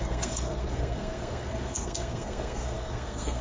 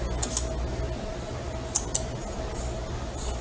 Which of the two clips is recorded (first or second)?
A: second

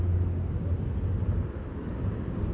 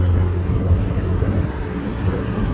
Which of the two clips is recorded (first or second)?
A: first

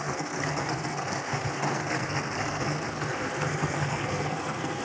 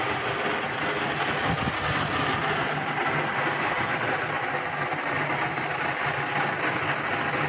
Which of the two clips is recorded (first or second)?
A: second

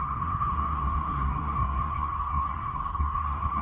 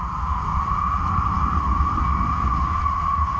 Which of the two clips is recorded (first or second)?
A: second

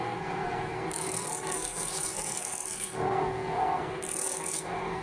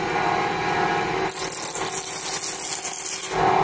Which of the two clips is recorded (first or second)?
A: second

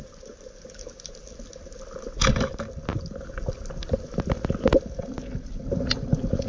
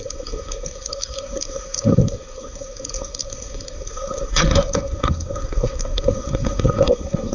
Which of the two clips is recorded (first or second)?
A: first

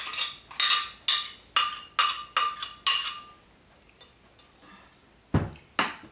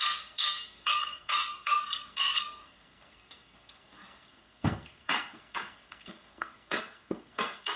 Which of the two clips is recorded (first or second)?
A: first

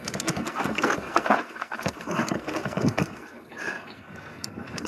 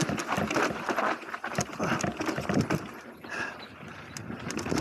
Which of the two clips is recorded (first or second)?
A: second